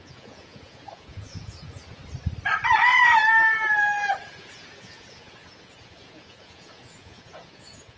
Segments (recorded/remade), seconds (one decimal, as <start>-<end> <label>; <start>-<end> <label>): 0.0-2.0 remade; 2.0-4.2 recorded; 4.2-8.0 remade